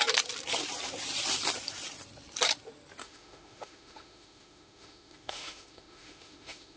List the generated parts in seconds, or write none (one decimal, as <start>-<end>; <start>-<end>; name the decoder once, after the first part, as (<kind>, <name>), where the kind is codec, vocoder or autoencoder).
3.0-6.8 (autoencoder, DAC-VAE)